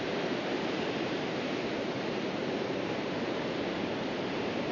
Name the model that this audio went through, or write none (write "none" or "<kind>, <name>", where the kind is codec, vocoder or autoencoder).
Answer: vocoder, BigVGAN v2